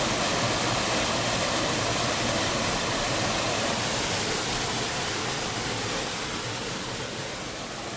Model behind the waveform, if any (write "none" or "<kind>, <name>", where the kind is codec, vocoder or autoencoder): none